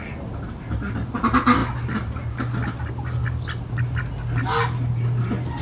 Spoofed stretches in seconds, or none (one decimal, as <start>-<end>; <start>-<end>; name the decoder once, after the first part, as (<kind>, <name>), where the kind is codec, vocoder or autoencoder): none